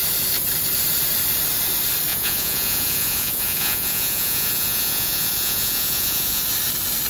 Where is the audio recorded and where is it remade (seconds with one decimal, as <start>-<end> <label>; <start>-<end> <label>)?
0.0-2.1 recorded; 2.1-6.4 remade; 6.4-7.1 recorded